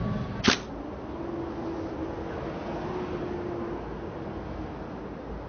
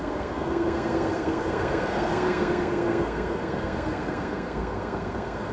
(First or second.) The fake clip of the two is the second